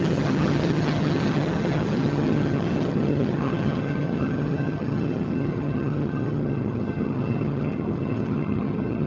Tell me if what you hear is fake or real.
fake